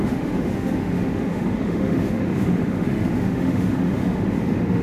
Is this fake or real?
fake